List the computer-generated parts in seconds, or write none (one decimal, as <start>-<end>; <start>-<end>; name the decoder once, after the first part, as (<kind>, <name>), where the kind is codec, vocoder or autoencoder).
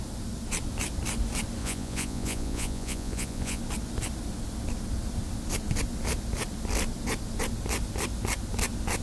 1.6-3.6 (vocoder, Vocos)